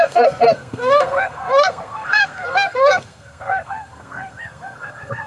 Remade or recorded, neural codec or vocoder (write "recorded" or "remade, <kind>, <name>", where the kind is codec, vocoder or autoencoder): remade, codec, SNAC